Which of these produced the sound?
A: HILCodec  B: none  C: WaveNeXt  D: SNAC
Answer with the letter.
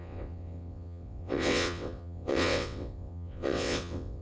C